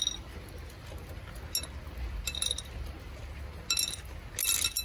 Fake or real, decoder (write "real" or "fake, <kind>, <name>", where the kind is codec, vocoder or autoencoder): real